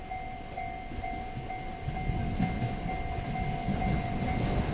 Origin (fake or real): real